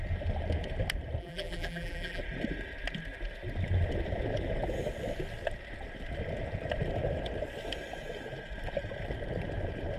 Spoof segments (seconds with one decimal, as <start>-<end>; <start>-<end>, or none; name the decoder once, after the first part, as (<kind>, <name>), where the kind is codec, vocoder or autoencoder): 1.2-2.2 (vocoder, BigVGAN v2)